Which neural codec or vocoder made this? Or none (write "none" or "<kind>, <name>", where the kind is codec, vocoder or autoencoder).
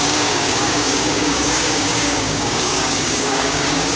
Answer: codec, DAC